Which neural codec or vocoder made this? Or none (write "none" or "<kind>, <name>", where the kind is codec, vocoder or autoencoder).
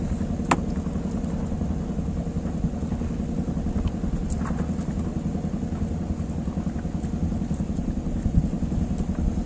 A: none